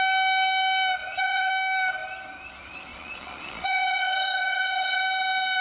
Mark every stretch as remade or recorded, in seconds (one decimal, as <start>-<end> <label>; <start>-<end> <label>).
0.0-1.0 recorded; 1.0-1.5 remade; 1.5-2.9 recorded; 2.9-5.0 remade; 5.0-5.6 recorded